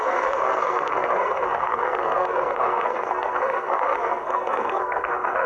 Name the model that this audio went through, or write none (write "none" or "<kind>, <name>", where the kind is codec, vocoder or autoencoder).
codec, SNAC